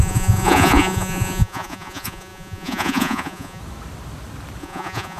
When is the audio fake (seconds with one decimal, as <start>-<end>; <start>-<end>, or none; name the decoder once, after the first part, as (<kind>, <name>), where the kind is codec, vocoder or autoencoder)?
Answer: 0.0-3.6 (vocoder, Vocos); 4.6-5.2